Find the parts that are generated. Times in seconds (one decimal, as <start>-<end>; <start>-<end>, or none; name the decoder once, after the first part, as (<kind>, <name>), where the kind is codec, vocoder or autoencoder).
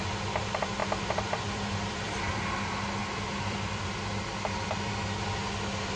0.8-2.3 (vocoder, BigVGAN v2); 3.0-4.1